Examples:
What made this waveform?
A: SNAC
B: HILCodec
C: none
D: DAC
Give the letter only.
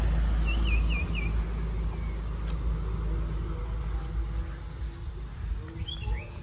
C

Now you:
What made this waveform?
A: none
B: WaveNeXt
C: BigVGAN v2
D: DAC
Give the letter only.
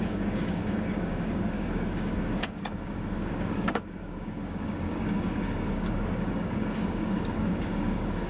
D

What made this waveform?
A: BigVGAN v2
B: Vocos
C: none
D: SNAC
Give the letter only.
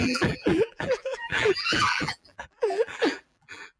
A